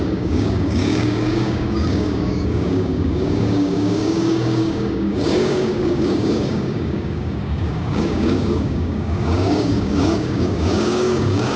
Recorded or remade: remade